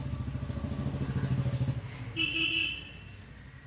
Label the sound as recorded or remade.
recorded